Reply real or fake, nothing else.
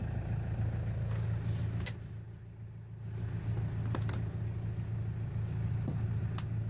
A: real